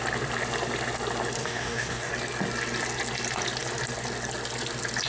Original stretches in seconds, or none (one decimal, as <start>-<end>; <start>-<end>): 0.0-1.4; 2.1-5.1

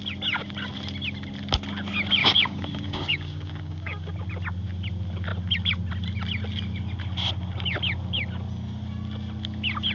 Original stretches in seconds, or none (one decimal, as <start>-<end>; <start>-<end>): 0.0-2.2; 4.1-9.9

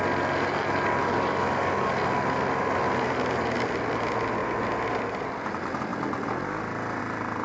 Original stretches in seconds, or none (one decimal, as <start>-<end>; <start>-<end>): 0.0-1.0; 1.9-7.4

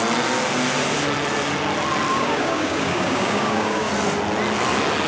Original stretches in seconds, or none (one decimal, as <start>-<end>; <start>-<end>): 0.0-2.1; 3.9-5.1

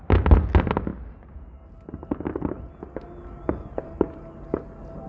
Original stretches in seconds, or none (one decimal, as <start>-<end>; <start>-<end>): 0.0-5.1

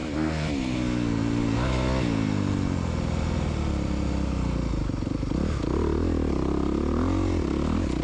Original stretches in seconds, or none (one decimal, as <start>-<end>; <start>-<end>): 0.0-8.0

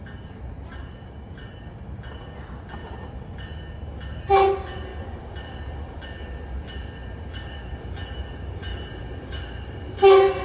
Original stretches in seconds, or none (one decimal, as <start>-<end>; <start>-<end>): 0.0-10.4